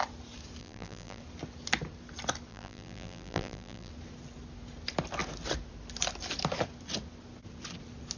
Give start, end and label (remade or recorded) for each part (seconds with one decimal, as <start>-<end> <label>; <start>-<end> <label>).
0.0-0.6 recorded; 0.6-1.2 remade; 1.2-2.5 recorded; 2.5-3.9 remade; 3.9-8.2 recorded